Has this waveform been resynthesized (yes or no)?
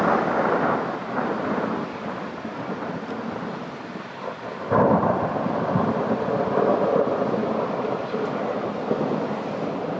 no